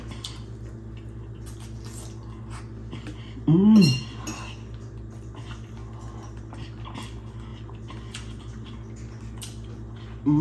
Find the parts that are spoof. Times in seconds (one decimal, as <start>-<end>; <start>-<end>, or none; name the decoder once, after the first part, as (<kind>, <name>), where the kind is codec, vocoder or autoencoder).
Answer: none